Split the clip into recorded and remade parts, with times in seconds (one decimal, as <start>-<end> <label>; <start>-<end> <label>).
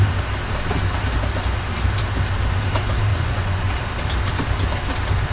0.0-3.1 recorded; 3.1-3.7 remade; 3.7-5.3 recorded